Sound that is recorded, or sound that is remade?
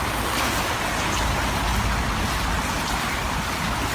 recorded